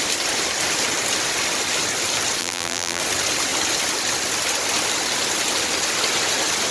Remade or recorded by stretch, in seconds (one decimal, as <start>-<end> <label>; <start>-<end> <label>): 0.0-2.4 recorded; 2.4-3.0 remade; 3.0-6.7 recorded